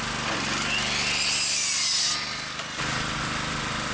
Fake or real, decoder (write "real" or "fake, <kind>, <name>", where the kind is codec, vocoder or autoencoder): real